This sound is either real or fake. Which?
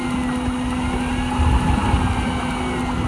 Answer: real